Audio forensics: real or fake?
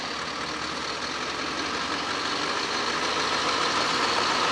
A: real